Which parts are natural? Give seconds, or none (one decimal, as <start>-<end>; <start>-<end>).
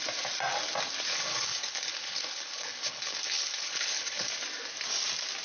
0.0-1.1; 4.3-5.4